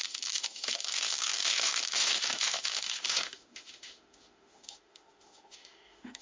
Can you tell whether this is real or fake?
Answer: fake